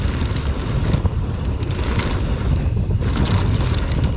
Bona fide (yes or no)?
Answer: yes